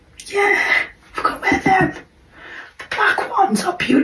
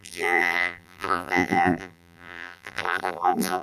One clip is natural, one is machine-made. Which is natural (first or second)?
first